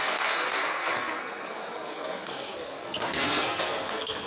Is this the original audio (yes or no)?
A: no